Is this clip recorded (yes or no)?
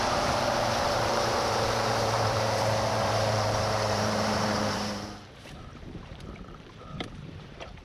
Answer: no